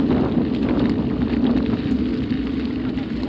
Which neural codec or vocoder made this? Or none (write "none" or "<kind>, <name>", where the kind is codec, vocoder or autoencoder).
none